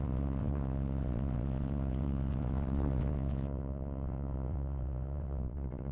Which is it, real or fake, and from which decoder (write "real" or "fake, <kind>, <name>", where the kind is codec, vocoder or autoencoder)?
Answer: fake, vocoder, WaveNeXt